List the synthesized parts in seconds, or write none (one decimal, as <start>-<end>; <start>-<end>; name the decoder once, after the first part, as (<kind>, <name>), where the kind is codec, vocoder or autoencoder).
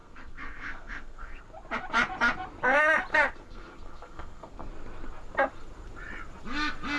0.0-1.4 (codec, SNAC); 3.1-4.7